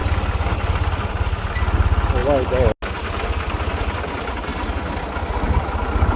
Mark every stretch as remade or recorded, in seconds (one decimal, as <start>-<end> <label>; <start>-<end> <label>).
0.0-6.2 recorded